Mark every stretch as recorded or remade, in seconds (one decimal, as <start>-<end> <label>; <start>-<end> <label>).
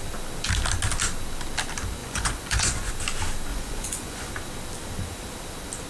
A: 0.0-2.0 recorded; 2.0-2.9 remade; 2.9-3.5 recorded; 3.5-4.3 remade; 4.3-5.9 recorded